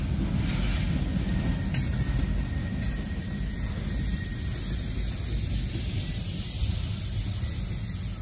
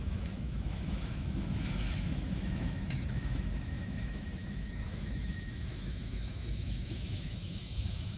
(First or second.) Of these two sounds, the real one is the first